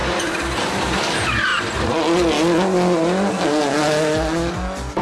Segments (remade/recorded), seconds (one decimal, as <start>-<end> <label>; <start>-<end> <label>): 0.0-5.0 recorded